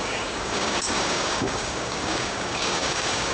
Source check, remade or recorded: remade